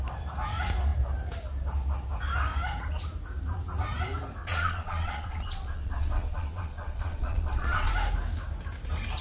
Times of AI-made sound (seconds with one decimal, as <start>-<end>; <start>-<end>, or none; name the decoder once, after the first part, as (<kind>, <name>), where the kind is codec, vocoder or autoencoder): 4.4-7.9 (vocoder, Vocos)